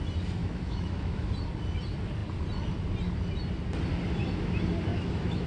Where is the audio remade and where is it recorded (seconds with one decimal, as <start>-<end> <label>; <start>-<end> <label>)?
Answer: 0.0-0.4 recorded; 0.4-1.3 remade; 1.3-4.9 recorded; 4.9-5.5 remade